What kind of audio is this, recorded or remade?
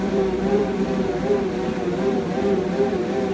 remade